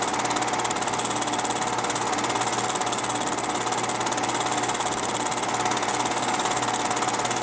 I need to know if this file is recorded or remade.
recorded